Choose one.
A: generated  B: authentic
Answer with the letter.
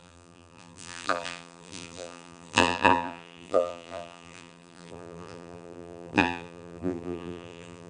A